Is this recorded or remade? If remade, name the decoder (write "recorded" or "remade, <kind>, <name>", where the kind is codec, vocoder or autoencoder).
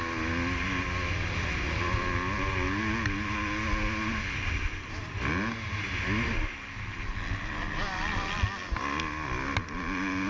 recorded